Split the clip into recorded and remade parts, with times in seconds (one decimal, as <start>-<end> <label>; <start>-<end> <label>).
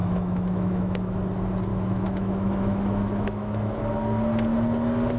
0.0-1.2 remade; 1.2-1.7 recorded; 1.7-3.8 remade; 3.8-5.2 recorded